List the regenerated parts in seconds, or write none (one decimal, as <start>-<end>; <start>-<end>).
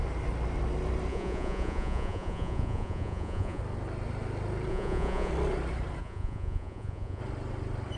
1.1-3.6; 4.7-5.3; 6.0-7.2